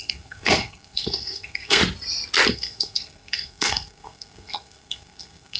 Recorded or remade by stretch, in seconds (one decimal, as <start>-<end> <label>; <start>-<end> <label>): 0.0-1.8 remade; 1.8-2.5 recorded; 2.5-5.6 remade